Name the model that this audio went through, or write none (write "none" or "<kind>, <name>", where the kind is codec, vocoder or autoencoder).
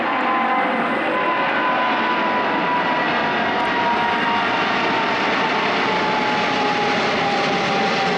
none